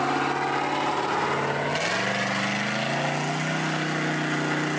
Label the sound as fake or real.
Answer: real